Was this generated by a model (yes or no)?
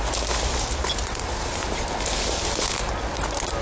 no